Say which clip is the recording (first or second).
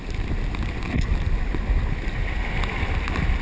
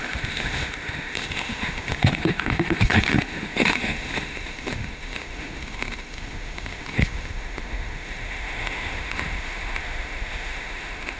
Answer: first